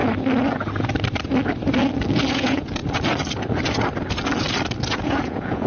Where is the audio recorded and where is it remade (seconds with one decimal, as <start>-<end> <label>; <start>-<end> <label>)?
0.0-2.3 recorded; 2.3-2.8 remade; 2.8-4.9 recorded; 4.9-5.7 remade